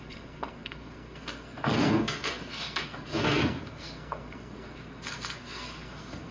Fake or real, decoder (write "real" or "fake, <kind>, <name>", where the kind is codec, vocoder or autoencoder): fake, codec, SNAC